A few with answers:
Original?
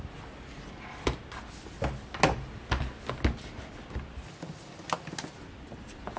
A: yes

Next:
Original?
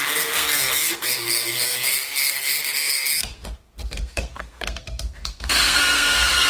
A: no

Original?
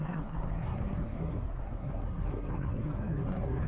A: no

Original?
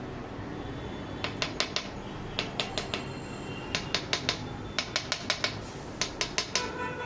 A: yes